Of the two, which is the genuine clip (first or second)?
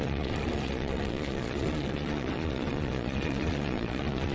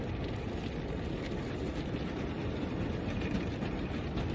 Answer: second